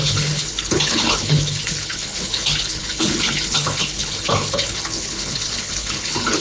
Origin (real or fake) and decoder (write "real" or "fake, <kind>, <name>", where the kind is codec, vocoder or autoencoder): fake, codec, HILCodec